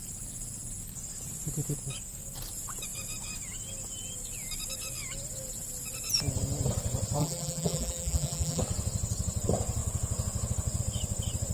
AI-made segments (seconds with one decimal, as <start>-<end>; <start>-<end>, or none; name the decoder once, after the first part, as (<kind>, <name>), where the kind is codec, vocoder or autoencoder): 7.2-8.6 (vocoder, BigVGAN v2)